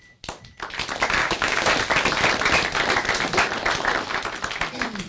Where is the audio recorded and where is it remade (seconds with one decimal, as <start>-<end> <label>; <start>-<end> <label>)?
0.0-1.2 recorded; 1.2-1.7 remade; 1.7-5.1 recorded

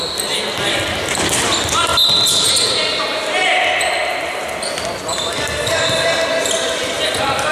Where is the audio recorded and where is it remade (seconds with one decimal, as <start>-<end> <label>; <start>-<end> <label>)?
0.0-7.5 recorded

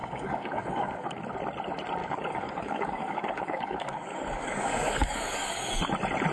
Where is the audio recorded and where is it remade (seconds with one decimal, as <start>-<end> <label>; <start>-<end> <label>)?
0.0-1.2 remade; 1.2-2.0 recorded; 2.0-5.8 remade; 5.8-6.3 recorded

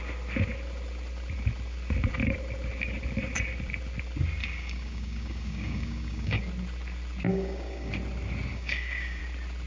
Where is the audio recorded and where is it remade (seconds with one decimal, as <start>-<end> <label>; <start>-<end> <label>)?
0.0-4.4 recorded; 4.4-6.4 remade; 6.4-7.3 recorded; 7.3-7.9 remade; 7.9-8.5 recorded; 8.5-9.2 remade; 9.2-9.7 recorded

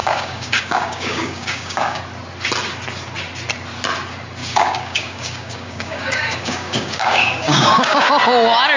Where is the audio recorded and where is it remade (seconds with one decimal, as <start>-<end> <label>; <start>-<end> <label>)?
0.0-2.0 remade; 2.0-4.4 recorded; 4.4-8.1 remade; 8.1-8.8 recorded

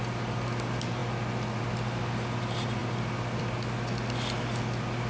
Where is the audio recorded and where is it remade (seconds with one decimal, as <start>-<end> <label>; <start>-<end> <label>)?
0.0-5.1 recorded